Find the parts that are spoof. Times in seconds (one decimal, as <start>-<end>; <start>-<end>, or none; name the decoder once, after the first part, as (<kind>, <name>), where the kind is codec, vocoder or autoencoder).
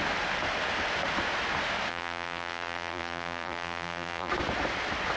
1.9-4.3 (vocoder, BigVGAN v2)